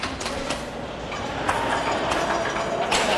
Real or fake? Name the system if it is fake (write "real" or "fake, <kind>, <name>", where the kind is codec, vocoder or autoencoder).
real